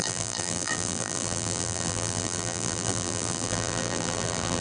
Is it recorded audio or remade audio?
remade